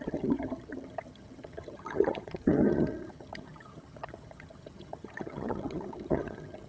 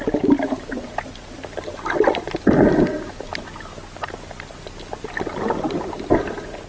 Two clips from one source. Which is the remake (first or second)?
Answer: first